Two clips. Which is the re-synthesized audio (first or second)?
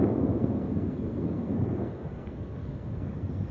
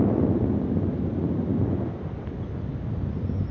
first